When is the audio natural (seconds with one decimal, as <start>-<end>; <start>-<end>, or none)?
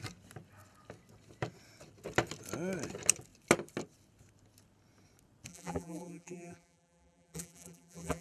0.0-5.5